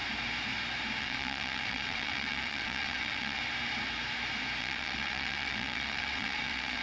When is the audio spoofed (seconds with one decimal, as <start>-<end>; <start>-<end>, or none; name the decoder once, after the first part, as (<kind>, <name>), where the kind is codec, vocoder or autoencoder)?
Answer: 1.0-3.4 (vocoder, WaveNeXt); 4.6-6.8

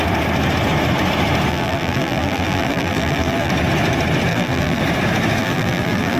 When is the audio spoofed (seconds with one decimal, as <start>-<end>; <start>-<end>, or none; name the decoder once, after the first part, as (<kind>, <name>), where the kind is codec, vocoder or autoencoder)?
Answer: 1.5-3.5 (vocoder, BigVGAN v2); 4.3-4.8; 5.4-6.2

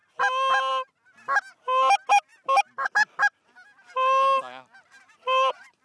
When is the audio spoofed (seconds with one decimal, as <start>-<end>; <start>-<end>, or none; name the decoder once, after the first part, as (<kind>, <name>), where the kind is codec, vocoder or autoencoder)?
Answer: none

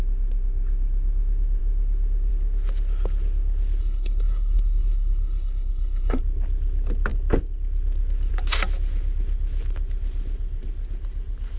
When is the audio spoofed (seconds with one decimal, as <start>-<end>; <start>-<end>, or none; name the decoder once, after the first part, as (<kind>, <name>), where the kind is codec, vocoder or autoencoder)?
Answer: 3.8-6.2 (codec, SNAC)

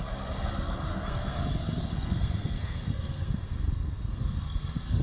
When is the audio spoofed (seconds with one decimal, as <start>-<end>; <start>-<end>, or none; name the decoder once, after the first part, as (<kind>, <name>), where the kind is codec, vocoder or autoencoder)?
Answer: 0.9-1.4 (codec, SNAC); 1.8-5.0

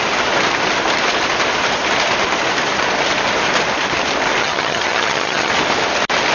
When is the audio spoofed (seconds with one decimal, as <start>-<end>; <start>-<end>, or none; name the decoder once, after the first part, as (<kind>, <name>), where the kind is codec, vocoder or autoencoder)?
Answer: 4.4-5.5 (vocoder, HiFi-GAN)